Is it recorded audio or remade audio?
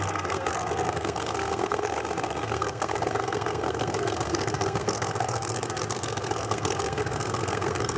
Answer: remade